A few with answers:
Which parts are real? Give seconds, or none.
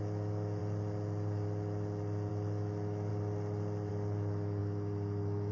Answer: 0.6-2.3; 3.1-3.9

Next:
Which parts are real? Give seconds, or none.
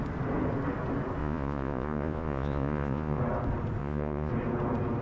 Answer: 0.0-1.2; 3.2-3.8; 4.3-5.0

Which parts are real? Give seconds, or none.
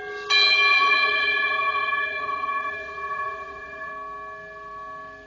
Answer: 0.0-0.7; 3.9-5.3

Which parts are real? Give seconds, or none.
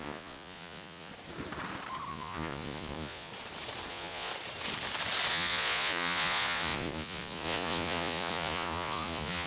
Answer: 1.1-2.1; 3.3-3.9; 4.3-5.3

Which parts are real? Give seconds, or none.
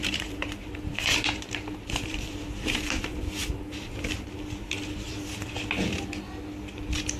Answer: 4.3-7.2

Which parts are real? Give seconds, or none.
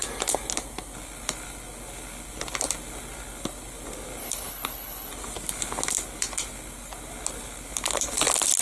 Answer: 0.0-4.2; 5.1-8.6